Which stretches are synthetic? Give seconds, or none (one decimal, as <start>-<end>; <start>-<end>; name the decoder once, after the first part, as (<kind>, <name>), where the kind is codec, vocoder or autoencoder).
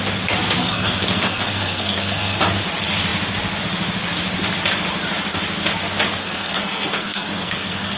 0.6-2.4 (codec, SNAC); 6.2-8.0